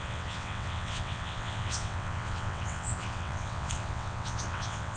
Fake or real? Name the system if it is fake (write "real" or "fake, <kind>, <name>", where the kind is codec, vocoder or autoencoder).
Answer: fake, vocoder, WaveNeXt